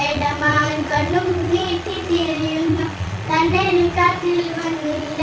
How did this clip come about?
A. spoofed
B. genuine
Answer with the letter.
A